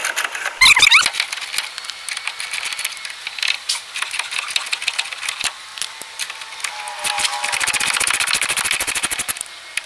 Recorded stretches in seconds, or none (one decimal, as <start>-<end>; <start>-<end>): 0.0-9.9